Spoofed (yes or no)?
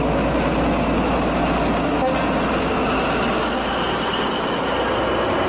no